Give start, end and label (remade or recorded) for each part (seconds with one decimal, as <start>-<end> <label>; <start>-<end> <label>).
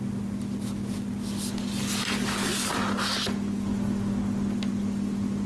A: 0.0-5.5 recorded